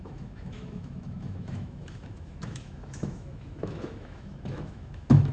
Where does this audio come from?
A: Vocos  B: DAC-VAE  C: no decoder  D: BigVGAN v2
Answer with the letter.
B